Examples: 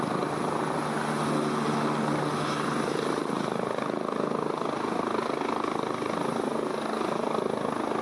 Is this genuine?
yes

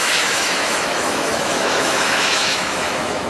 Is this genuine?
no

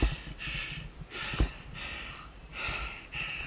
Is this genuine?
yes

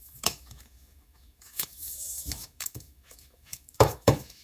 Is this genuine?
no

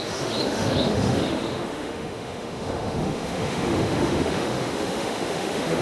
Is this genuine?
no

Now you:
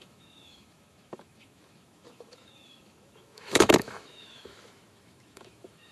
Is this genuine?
no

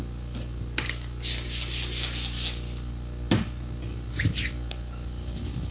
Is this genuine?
yes